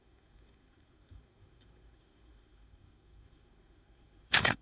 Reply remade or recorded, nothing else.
remade